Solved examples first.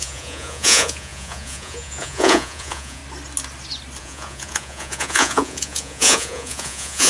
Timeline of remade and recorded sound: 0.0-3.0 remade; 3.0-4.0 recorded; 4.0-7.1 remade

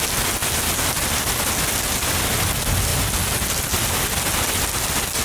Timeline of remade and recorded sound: 0.0-5.2 recorded